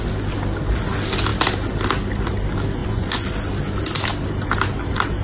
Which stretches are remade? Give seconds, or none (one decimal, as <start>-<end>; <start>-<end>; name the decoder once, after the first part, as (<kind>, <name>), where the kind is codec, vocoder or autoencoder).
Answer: 2.8-3.3 (vocoder, Vocos)

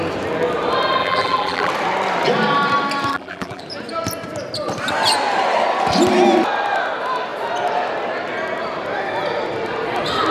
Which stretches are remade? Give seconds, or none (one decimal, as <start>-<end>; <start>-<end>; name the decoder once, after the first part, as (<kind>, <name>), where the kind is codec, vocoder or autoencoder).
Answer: 1.0-1.7 (vocoder, BigVGAN v2); 3.1-3.6

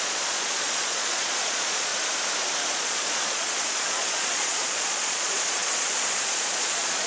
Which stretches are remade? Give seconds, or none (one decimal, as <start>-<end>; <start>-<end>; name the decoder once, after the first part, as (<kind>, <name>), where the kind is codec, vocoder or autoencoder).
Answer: 0.0-1.9 (vocoder, Vocos); 2.7-7.1